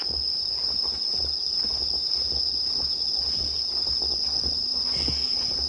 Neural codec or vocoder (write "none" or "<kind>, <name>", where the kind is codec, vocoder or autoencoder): none